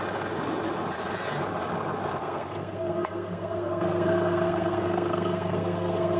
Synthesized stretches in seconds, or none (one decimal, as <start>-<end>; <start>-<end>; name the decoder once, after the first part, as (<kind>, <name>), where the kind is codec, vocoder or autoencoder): 2.2-6.2 (codec, SNAC)